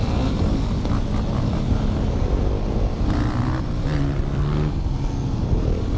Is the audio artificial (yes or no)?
no